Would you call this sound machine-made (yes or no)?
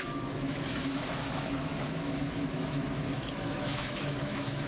yes